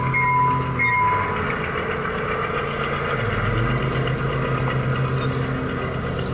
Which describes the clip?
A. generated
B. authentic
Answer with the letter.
B